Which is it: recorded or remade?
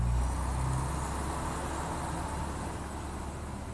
recorded